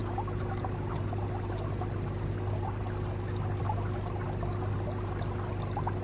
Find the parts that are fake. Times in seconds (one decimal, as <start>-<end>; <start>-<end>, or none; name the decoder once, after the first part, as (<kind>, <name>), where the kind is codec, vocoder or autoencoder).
none